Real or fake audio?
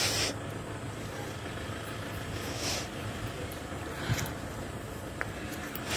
real